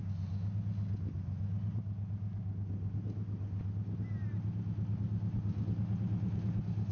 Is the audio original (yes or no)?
yes